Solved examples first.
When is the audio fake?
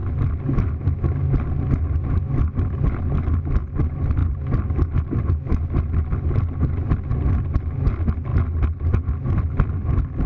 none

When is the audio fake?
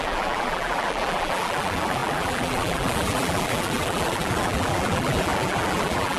0.0-6.2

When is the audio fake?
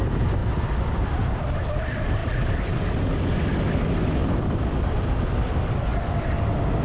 none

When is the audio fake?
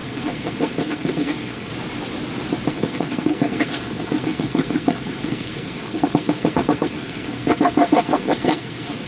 0.0-1.7; 2.7-9.1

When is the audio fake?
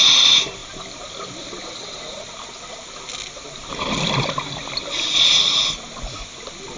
none